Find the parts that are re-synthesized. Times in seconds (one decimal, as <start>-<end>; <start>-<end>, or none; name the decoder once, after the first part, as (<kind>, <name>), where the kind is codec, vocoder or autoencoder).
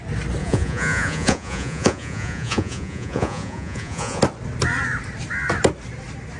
0.4-4.2 (vocoder, Vocos)